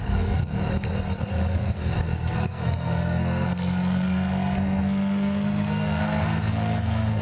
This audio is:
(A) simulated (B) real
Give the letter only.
A